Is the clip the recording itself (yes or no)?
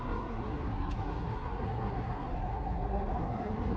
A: no